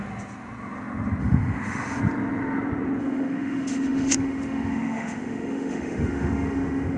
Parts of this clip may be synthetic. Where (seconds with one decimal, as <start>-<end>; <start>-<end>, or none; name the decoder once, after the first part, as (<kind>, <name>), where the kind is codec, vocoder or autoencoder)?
1.2-2.0 (autoencoder, DAC-VAE); 3.0-7.0